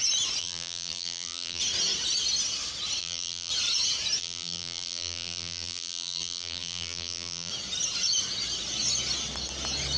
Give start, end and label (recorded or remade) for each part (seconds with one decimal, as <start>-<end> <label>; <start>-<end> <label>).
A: 0.0-0.4 recorded; 0.4-1.6 remade; 1.6-3.0 recorded; 3.0-3.5 remade; 3.5-4.2 recorded; 4.2-7.5 remade; 7.5-10.0 recorded